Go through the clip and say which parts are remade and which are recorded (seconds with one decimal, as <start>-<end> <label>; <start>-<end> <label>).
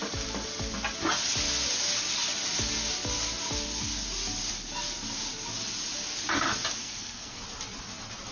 0.0-6.8 recorded; 6.8-7.4 remade; 7.4-8.3 recorded